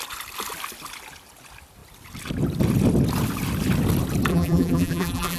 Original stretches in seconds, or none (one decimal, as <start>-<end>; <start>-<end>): 0.0-4.3